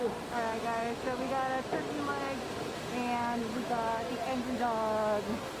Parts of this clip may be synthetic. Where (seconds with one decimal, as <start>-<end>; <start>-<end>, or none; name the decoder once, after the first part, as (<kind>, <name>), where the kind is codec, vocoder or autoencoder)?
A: 0.8-1.3 (autoencoder, DAC-VAE)